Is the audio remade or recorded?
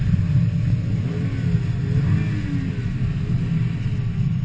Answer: recorded